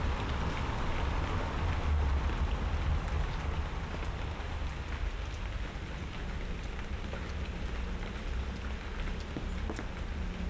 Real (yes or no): yes